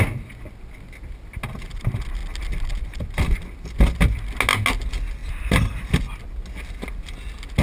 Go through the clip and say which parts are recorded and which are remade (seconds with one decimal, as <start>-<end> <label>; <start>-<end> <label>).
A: 0.0-5.2 recorded; 5.2-5.8 remade; 5.8-7.6 recorded